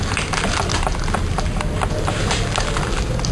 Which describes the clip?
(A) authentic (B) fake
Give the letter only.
A